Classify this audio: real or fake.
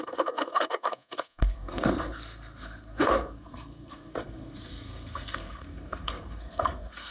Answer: fake